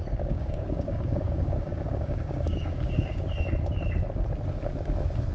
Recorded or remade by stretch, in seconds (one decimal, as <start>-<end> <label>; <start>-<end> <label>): 0.0-3.2 remade; 3.2-5.3 recorded